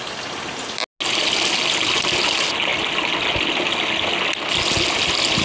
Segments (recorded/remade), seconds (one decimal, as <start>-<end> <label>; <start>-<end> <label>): 0.0-5.4 recorded